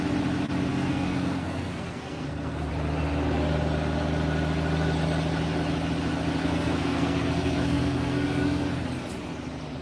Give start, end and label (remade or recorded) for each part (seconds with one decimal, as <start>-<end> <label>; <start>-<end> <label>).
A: 0.0-0.7 recorded; 0.7-2.7 remade; 2.7-6.4 recorded; 6.4-8.7 remade; 8.7-9.8 recorded